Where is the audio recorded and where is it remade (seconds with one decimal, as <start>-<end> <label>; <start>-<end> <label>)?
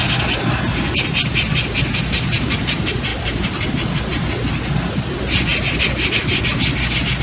0.0-7.2 recorded